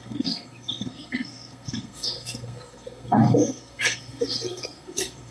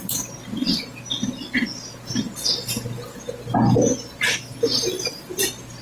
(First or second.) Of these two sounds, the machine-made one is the first